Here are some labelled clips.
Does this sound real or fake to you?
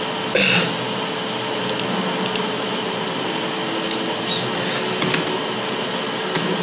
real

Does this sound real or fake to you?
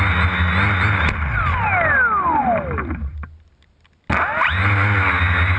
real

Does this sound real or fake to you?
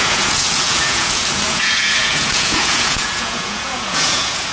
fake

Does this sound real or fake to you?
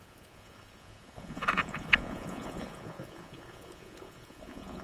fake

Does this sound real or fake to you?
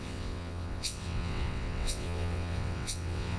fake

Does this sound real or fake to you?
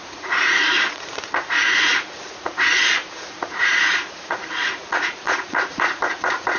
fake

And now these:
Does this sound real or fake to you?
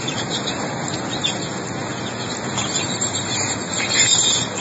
real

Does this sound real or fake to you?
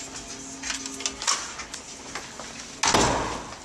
real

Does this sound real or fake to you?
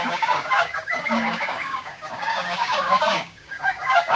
fake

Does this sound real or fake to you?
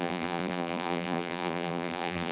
fake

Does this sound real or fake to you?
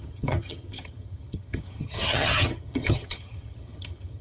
fake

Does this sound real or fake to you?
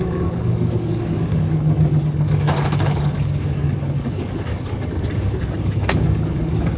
fake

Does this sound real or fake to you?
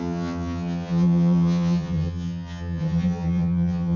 fake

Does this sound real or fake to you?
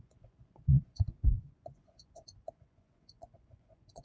fake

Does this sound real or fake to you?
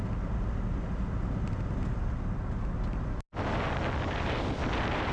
real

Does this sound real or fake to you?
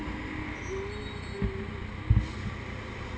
real